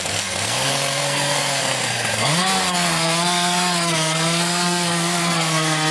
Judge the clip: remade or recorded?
remade